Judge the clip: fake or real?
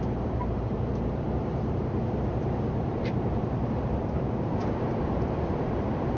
fake